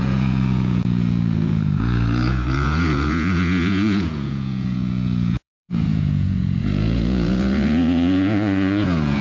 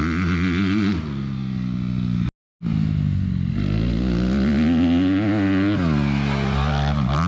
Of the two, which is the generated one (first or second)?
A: first